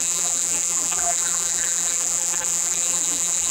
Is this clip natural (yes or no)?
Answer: no